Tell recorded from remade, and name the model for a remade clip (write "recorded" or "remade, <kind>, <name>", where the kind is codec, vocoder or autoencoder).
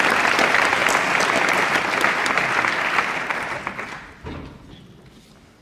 recorded